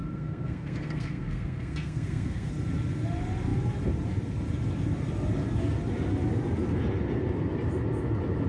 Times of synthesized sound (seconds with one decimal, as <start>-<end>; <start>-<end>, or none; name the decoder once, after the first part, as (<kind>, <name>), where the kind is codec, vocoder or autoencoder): 0.0-2.5 (codec, SNAC)